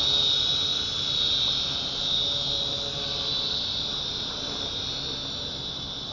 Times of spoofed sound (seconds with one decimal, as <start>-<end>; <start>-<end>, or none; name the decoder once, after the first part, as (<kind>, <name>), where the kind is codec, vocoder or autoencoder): none